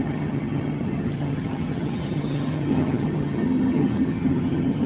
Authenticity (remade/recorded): remade